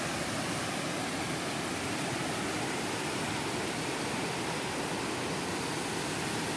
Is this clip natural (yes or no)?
yes